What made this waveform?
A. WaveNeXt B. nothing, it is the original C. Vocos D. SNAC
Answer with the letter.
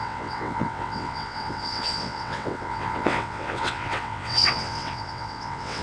A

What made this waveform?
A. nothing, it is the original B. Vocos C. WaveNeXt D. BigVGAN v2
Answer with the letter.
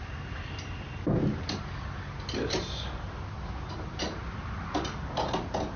A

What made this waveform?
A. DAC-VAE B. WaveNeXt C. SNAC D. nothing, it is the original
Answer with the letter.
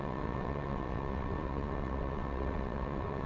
B